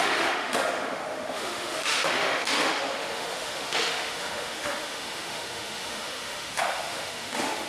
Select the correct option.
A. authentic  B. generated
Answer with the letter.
B